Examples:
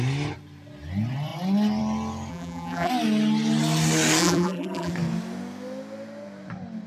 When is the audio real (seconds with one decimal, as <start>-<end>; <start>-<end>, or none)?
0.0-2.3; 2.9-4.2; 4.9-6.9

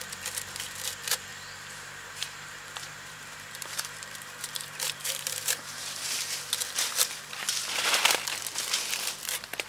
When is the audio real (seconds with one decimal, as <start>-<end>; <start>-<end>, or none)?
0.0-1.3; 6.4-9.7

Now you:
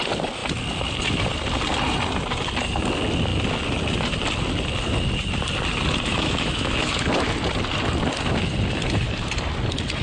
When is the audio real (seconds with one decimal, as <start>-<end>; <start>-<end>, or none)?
0.0-6.1; 7.1-10.0